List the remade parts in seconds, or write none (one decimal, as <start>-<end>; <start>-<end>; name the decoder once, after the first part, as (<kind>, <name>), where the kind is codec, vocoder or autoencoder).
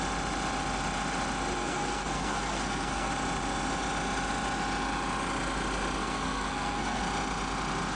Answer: 1.6-3.1 (codec, SNAC); 6.0-7.0